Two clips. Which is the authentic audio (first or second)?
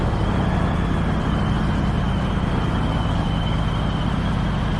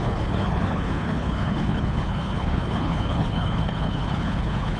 first